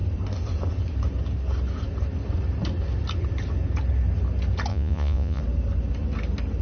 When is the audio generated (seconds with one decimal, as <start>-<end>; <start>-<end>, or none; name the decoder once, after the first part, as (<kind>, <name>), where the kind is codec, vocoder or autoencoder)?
4.7-5.4 (vocoder, Vocos)